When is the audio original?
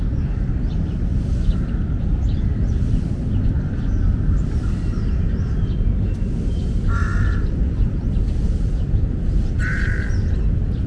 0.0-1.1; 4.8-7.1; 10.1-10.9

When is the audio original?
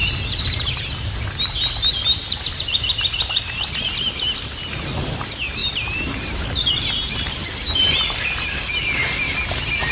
1.1-2.2; 3.6-5.6; 8.6-9.9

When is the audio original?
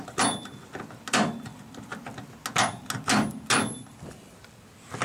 0.0-5.0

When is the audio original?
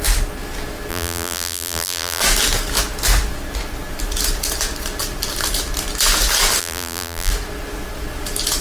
0.0-0.9; 2.2-6.6; 7.3-8.6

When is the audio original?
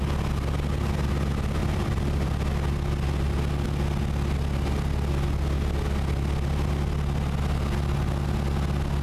0.0-1.6; 2.3-9.0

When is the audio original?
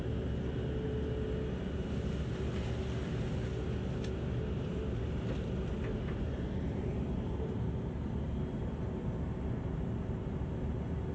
0.0-5.7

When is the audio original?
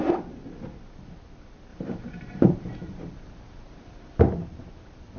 0.0-1.7; 4.2-5.2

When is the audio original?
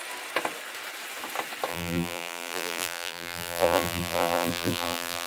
0.0-1.7